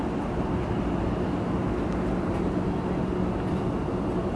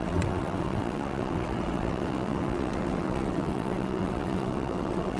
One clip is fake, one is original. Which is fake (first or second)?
second